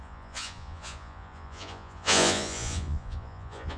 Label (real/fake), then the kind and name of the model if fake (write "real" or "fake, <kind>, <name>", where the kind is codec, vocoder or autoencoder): fake, vocoder, Vocos